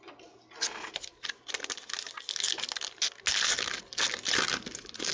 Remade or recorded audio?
recorded